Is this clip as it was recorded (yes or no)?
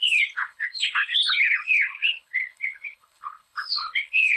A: no